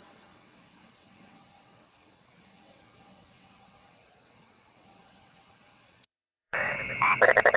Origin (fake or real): fake